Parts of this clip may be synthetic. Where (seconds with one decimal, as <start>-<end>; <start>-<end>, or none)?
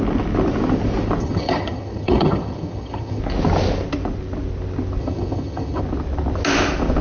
1.2-3.2; 5.0-5.8